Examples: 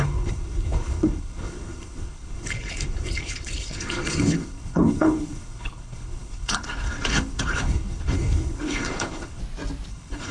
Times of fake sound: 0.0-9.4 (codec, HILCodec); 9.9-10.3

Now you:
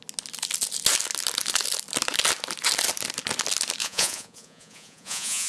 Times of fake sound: 3.8-5.5 (vocoder, Vocos)